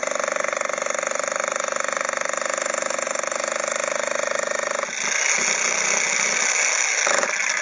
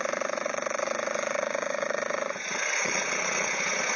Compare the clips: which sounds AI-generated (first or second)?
second